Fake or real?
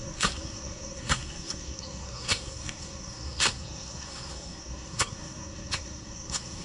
fake